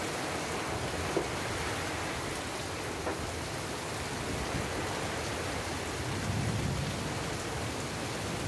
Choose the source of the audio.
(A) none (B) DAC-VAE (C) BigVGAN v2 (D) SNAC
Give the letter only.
A